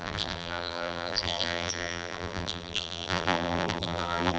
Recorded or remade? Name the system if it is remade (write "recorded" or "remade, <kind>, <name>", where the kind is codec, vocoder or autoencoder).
remade, vocoder, BigVGAN v2